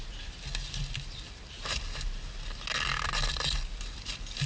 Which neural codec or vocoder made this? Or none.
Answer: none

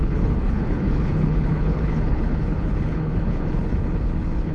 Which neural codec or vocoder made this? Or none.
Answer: codec, HILCodec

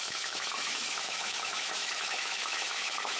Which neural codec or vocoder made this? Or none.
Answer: autoencoder, DAC-VAE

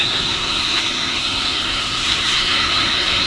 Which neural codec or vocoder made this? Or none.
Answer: codec, SNAC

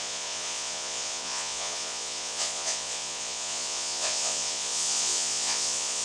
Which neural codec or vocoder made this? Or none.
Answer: vocoder, Vocos